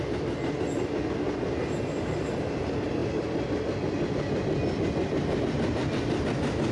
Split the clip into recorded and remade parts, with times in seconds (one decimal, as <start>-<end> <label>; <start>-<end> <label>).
0.0-6.7 recorded